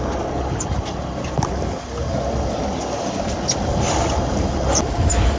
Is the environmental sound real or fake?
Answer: real